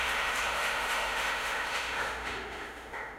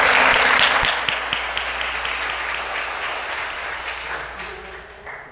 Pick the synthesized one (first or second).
first